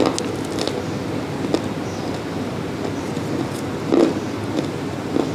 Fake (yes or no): no